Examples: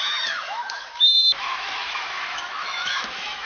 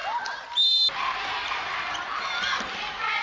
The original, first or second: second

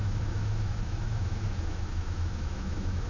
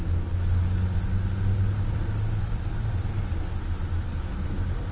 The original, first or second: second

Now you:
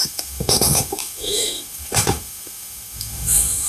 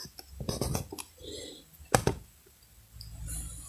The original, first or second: second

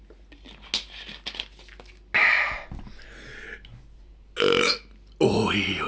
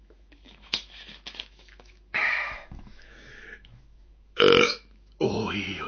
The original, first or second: first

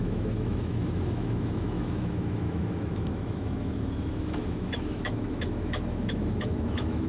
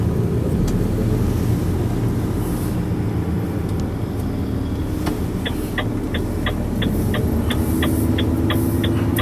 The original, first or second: second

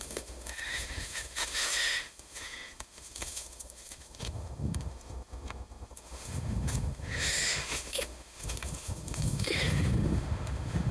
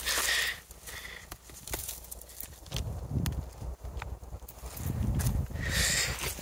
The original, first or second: second